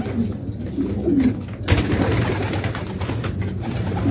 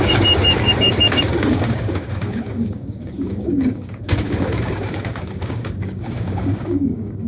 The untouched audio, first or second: first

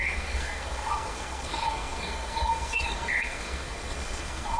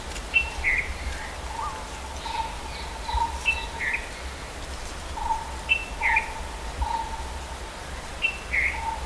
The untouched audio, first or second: second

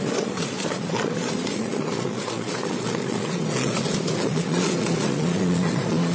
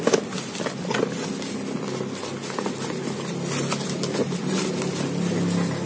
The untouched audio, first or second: second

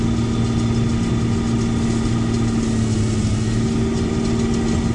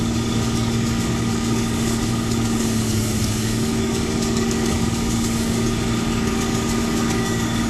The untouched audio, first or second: first